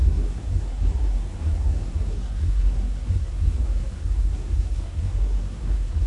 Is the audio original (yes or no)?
no